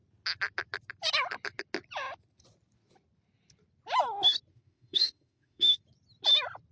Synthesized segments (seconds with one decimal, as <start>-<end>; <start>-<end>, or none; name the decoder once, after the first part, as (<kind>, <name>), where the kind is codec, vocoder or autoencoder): 4.5-5.8 (autoencoder, DAC-VAE)